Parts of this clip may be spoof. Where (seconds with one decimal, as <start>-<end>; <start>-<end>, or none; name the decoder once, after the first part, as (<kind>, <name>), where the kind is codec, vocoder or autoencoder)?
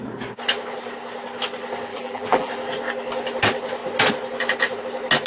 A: 1.9-2.5 (vocoder, BigVGAN v2)